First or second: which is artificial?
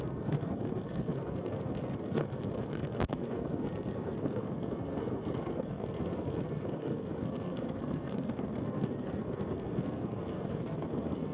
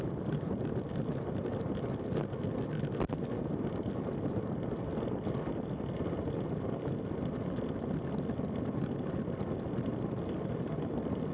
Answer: first